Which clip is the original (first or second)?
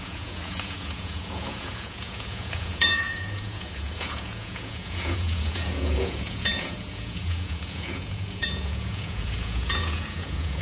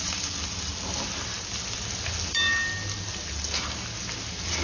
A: second